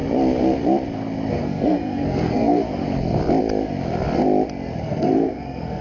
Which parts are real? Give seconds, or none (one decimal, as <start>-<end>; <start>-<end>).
0.0-1.3; 2.8-4.8